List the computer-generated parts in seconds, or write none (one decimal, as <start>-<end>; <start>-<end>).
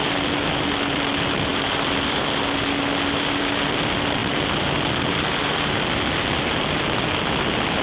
none